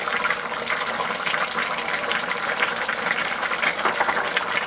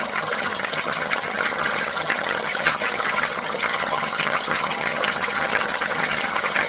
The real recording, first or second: first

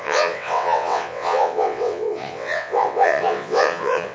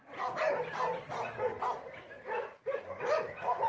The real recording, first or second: second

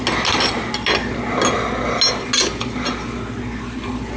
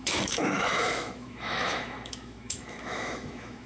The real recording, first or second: first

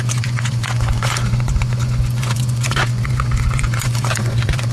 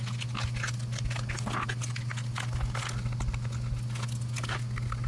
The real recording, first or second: second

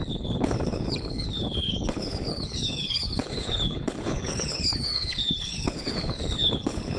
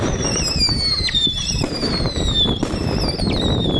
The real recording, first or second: second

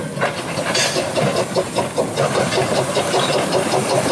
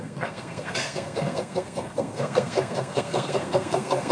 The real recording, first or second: first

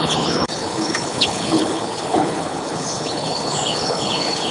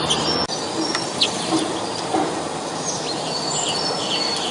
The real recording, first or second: second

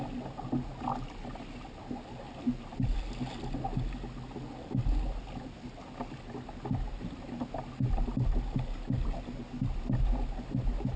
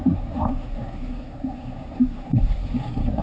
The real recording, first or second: first